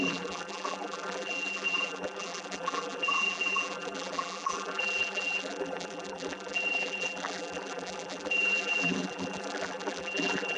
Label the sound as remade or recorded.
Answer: remade